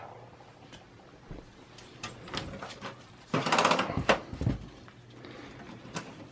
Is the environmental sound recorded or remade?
recorded